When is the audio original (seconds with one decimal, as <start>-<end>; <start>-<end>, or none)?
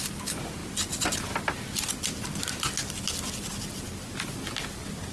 0.0-5.1